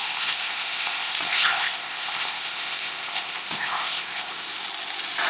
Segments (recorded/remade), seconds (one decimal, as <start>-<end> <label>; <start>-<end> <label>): 0.0-4.5 remade; 4.5-5.3 recorded